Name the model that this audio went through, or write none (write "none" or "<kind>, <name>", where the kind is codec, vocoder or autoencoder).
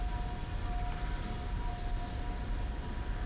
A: none